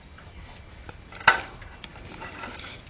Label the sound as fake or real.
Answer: fake